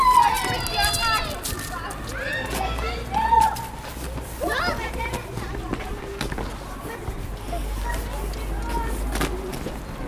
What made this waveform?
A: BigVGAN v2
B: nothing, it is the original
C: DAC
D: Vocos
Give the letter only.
B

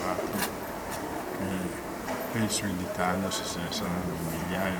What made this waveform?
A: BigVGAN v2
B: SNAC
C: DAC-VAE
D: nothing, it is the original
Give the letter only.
A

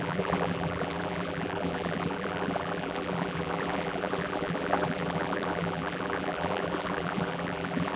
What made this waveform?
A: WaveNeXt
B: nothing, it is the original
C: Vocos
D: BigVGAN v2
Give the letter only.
D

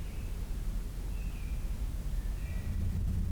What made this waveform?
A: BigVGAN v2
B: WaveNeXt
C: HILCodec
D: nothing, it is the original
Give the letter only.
D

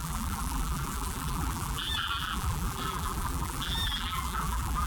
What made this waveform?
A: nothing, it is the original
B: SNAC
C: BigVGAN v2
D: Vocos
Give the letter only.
C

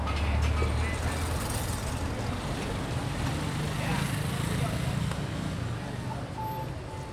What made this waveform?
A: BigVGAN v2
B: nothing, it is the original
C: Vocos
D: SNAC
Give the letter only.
B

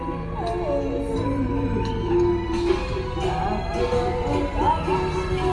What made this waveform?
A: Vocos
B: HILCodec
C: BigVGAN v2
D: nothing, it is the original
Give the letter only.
D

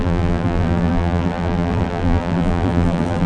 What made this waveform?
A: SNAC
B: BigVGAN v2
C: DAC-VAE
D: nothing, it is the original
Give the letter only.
B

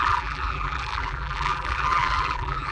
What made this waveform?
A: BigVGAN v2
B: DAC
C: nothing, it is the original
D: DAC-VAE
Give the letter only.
A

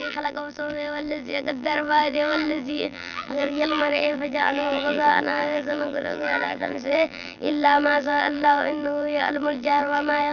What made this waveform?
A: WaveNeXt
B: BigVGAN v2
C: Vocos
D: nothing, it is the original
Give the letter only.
B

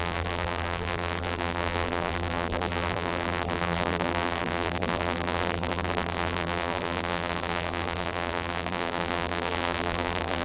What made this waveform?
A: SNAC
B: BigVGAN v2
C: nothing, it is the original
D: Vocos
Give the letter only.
B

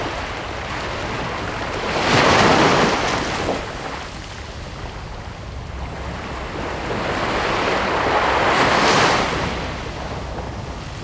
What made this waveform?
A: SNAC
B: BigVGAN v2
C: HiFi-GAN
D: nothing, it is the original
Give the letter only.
D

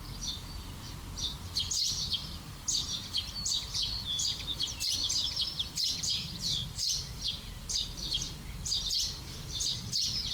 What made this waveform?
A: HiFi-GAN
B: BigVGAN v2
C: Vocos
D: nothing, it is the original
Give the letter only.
B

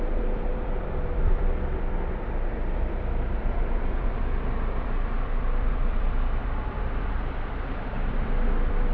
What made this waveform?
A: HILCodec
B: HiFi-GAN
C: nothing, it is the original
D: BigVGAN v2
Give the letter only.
D